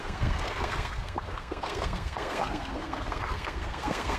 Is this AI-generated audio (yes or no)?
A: yes